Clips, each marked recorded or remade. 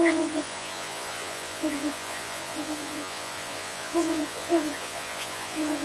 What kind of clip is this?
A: remade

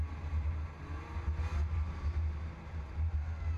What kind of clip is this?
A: recorded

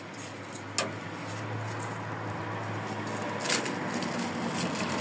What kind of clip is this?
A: recorded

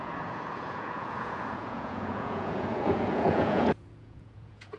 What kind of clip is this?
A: remade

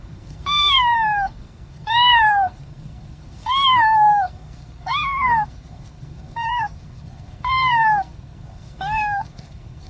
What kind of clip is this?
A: remade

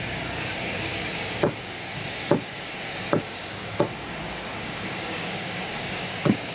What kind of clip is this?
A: remade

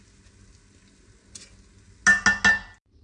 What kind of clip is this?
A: recorded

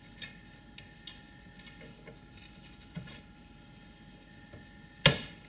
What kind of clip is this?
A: recorded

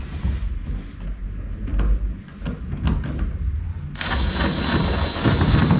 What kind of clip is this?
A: recorded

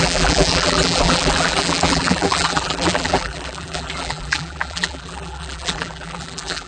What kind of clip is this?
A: remade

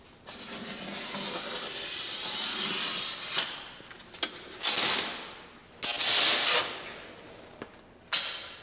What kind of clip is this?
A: recorded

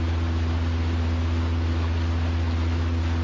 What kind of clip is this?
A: recorded